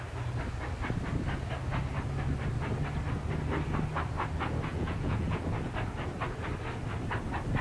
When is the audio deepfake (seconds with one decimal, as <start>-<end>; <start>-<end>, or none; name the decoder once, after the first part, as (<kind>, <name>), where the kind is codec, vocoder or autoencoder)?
4.7-5.4 (vocoder, Vocos)